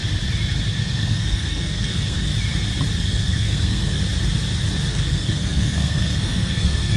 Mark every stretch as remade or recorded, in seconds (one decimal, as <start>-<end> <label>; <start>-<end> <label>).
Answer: 0.0-0.8 recorded; 0.8-2.3 remade; 2.3-3.0 recorded; 3.0-4.0 remade; 4.0-4.9 recorded; 4.9-7.0 remade